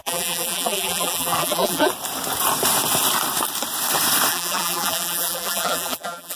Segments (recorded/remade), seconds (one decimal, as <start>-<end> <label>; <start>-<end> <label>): 0.0-1.9 remade; 1.9-4.3 recorded; 4.3-6.4 remade